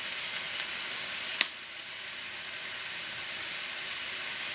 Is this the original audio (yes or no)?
no